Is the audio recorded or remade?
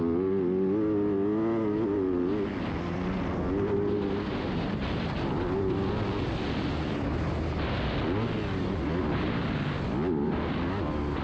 recorded